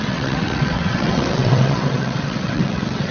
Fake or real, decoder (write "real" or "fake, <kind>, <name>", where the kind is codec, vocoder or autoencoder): fake, vocoder, WaveNeXt